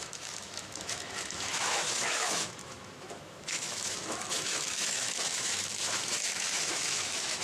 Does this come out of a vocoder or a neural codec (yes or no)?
yes